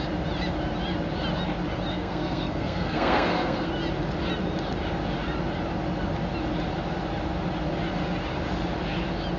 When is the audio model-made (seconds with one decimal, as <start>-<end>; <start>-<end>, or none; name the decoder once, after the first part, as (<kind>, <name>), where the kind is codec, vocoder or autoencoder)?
1.9-3.7 (codec, SNAC)